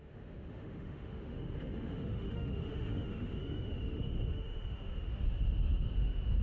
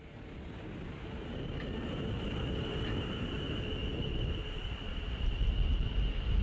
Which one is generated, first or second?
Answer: first